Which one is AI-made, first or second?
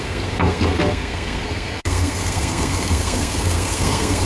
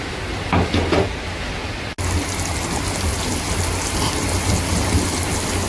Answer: first